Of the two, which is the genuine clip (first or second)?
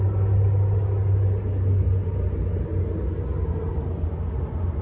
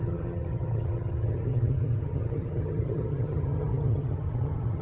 first